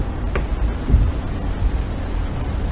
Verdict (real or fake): real